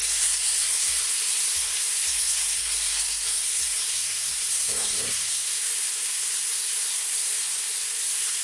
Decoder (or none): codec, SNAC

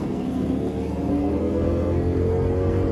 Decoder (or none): codec, SNAC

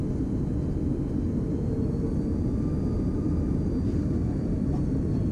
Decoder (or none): none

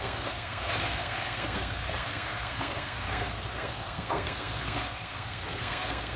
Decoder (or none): codec, SNAC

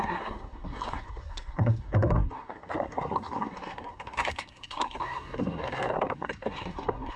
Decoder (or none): codec, SNAC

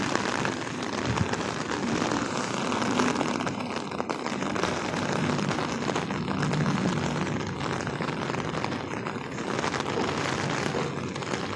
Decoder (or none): none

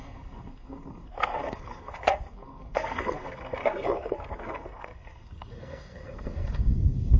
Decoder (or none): codec, SNAC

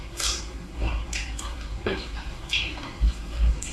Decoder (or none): codec, SNAC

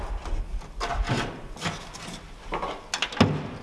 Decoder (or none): none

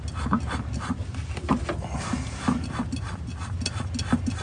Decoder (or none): none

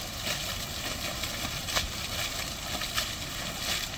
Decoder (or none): none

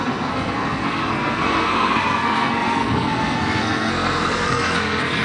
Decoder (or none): codec, SNAC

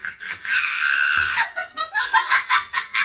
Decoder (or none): codec, SNAC